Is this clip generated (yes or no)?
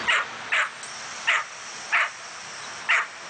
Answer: no